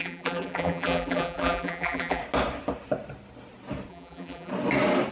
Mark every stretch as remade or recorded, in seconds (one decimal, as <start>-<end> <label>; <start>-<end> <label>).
0.0-2.2 remade; 2.2-3.9 recorded; 3.9-4.5 remade; 4.5-5.1 recorded